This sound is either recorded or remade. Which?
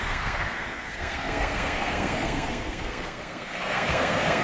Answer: remade